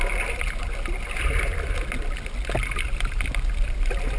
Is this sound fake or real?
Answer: real